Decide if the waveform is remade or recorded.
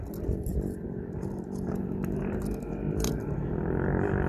recorded